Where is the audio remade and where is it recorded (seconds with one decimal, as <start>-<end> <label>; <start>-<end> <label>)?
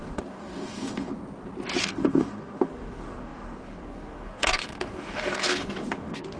0.0-1.1 remade; 1.1-1.8 recorded; 1.8-6.4 remade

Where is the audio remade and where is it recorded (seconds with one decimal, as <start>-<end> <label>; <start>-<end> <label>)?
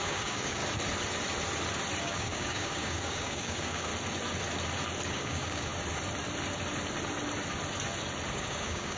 0.0-0.6 remade; 0.6-2.0 recorded; 2.0-3.9 remade; 3.9-5.1 recorded; 5.1-5.7 remade; 5.7-8.3 recorded; 8.3-9.0 remade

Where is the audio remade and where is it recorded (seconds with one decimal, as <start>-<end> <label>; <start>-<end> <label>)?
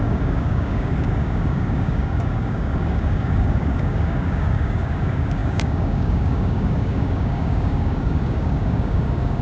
0.0-9.4 remade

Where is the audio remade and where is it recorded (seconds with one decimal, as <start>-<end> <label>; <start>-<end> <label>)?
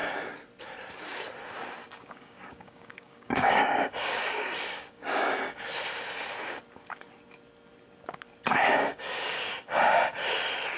0.0-1.8 recorded; 1.8-5.6 remade; 5.6-8.5 recorded; 8.5-9.8 remade; 9.8-10.8 recorded